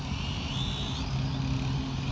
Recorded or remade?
recorded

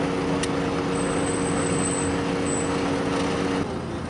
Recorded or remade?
recorded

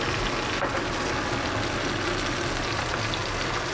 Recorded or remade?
recorded